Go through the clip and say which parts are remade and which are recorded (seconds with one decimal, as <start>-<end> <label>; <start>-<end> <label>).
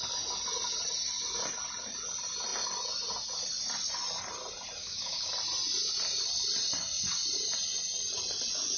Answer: 0.0-4.8 recorded; 4.8-5.3 remade; 5.3-8.8 recorded